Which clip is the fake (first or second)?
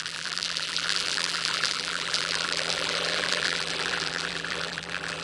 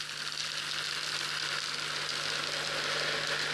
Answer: first